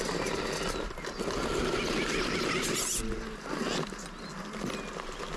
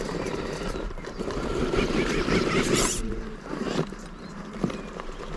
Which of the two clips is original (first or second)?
first